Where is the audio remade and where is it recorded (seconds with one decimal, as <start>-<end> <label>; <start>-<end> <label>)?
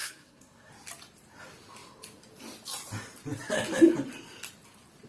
0.0-0.7 remade; 0.7-5.1 recorded